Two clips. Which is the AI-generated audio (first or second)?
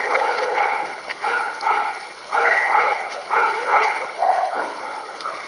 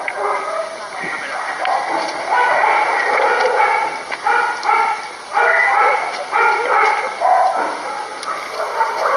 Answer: first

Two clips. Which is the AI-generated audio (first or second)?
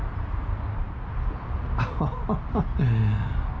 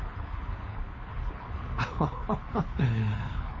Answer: second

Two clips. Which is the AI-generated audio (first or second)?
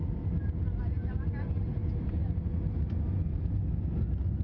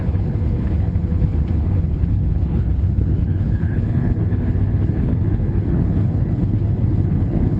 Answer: second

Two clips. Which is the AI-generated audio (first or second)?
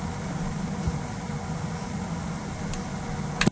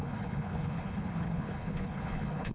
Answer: second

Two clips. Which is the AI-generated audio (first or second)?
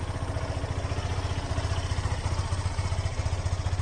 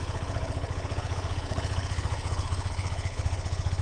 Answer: second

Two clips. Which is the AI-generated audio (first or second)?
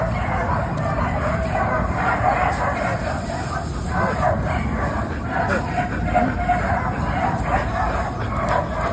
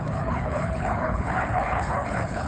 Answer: second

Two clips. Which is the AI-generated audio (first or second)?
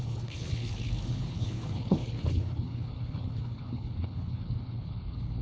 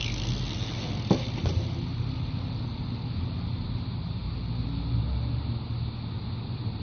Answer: first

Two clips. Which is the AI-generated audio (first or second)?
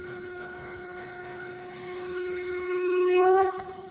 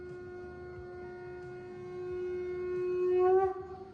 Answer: first